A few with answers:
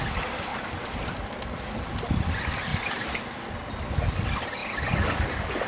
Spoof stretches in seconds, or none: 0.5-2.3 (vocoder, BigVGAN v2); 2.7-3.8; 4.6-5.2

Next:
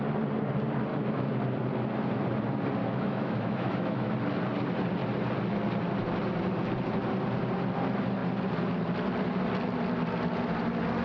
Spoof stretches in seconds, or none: 0.9-1.4 (autoencoder, DAC-VAE); 2.8-4.1

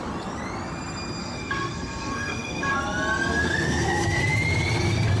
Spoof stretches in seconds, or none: 1.2-2.7 (codec, SNAC); 3.4-4.2

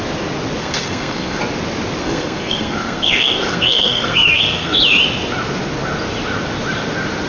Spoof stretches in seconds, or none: 0.6-1.4 (codec, SNAC); 2.0-4.8